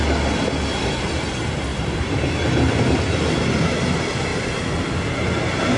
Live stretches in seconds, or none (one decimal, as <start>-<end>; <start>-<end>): 0.0-1.7; 2.3-5.8